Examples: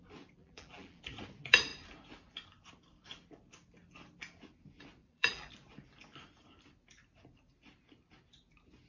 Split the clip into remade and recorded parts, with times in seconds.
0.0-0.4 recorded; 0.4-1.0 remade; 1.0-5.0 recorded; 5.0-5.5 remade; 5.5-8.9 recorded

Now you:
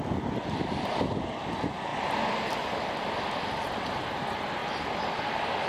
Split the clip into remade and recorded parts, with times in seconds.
0.0-5.7 recorded

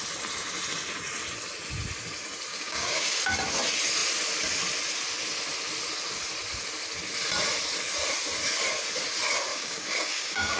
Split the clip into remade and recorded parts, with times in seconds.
0.0-2.5 recorded; 2.5-3.2 remade; 3.2-9.5 recorded; 9.5-10.6 remade

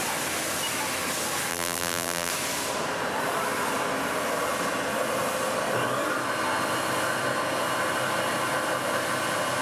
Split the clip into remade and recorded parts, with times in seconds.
0.0-1.5 recorded; 1.5-2.3 remade; 2.3-9.6 recorded

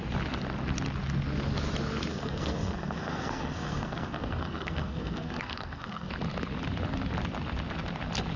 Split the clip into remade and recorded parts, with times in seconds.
0.0-2.1 recorded; 2.1-6.1 remade; 6.1-8.4 recorded